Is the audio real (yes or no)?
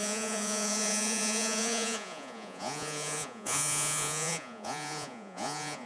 no